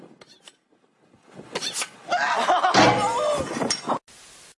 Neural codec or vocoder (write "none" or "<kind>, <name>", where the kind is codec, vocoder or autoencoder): none